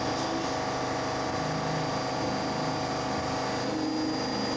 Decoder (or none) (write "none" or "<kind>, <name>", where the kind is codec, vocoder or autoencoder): none